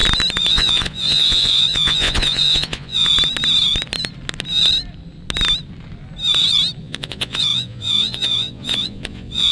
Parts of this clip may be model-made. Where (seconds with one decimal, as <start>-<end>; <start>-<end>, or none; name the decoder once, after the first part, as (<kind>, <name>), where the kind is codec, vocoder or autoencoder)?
0.5-3.1 (vocoder, Vocos); 6.8-9.5